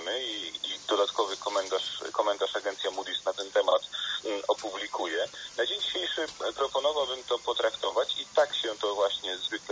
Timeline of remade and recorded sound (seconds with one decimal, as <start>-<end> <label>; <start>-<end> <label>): 0.0-3.7 remade; 3.7-4.2 recorded; 4.2-5.4 remade; 5.4-5.9 recorded; 5.9-8.3 remade; 8.3-9.7 recorded

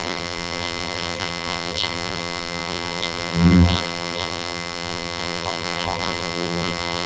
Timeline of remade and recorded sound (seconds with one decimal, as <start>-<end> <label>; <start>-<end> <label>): 0.0-7.1 remade

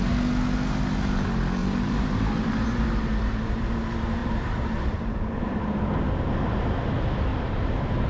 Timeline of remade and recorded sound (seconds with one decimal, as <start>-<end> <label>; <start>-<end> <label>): 0.0-1.6 recorded; 1.6-3.7 remade; 3.7-4.2 recorded; 4.2-5.6 remade; 5.6-7.3 recorded; 7.3-8.1 remade

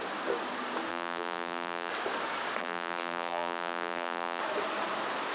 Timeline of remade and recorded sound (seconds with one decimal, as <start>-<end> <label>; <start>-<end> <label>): 0.0-0.9 recorded; 0.9-1.9 remade; 1.9-2.6 recorded; 2.6-4.4 remade; 4.4-5.3 recorded

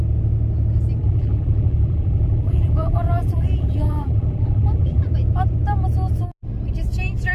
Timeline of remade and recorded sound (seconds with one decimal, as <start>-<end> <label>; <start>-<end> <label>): 0.0-1.0 recorded; 1.0-5.1 remade; 5.1-7.3 recorded